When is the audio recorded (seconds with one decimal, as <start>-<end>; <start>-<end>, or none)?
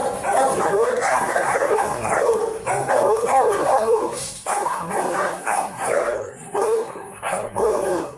0.0-0.6; 2.4-2.9